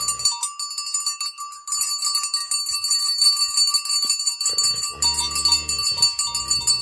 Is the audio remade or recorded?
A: recorded